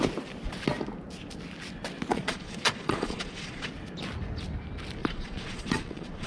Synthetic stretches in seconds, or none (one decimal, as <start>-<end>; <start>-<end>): 2.1-3.7; 5.0-6.3